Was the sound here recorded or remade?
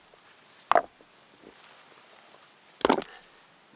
recorded